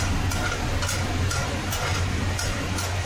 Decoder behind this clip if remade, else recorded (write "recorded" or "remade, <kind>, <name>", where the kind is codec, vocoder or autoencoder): recorded